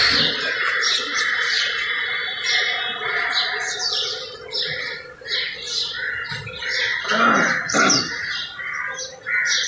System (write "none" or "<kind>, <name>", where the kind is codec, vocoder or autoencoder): none